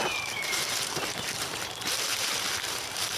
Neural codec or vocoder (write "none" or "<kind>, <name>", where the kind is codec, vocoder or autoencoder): vocoder, BigVGAN v2